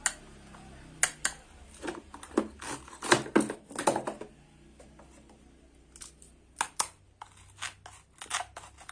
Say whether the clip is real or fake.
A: real